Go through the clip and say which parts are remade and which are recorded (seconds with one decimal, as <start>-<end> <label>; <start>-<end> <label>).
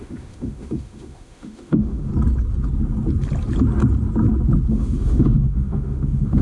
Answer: 0.0-2.1 remade; 2.1-4.7 recorded; 4.7-6.4 remade